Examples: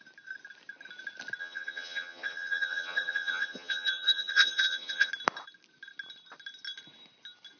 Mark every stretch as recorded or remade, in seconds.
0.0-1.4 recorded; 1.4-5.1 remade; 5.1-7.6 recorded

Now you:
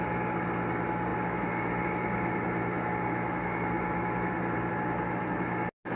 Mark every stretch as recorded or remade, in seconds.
0.0-6.0 recorded